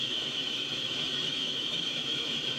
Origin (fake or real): fake